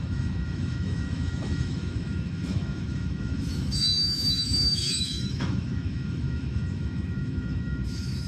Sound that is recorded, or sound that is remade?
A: remade